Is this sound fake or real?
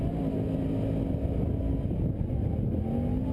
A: real